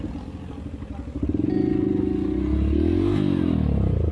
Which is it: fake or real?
real